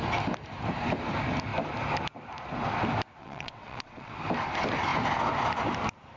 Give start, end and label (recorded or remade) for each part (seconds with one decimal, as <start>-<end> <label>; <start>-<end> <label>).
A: 0.0-3.2 recorded; 3.2-4.1 remade; 4.1-6.2 recorded